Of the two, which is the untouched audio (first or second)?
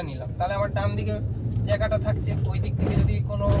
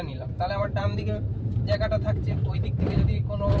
first